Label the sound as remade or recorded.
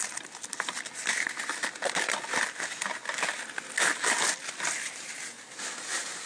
recorded